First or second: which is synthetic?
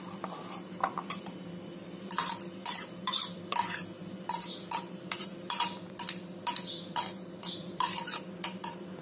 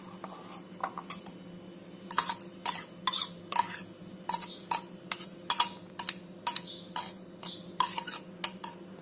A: first